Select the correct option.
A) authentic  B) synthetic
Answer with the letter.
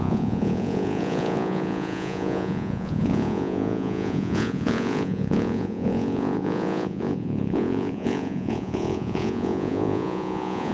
B